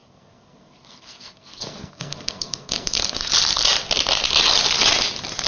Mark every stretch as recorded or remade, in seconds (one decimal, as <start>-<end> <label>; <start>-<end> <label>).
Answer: 0.0-3.3 remade; 3.3-5.5 recorded